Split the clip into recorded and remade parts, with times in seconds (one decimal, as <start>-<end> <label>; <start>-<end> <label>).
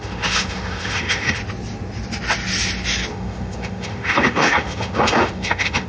0.0-1.4 remade; 1.4-3.1 recorded; 3.1-5.9 remade